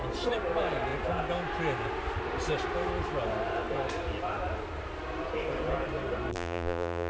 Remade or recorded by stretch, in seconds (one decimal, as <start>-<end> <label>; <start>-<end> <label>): 0.0-6.3 recorded; 6.3-7.1 remade